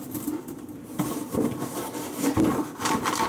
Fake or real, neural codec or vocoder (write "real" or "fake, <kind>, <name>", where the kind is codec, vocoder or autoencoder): real